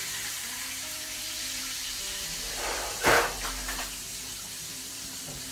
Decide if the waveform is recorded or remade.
remade